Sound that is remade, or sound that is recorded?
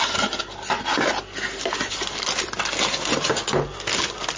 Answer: recorded